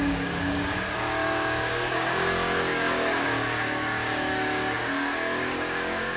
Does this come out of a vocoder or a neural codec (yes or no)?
yes